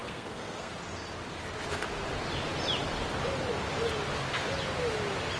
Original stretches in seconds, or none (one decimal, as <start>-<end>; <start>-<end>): 0.7-5.4